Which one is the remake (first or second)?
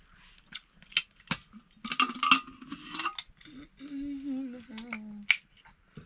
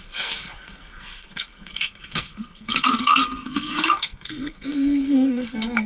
second